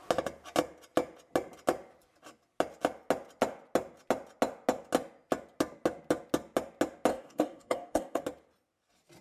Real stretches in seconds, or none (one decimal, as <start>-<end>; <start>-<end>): 0.0-7.1; 8.2-9.2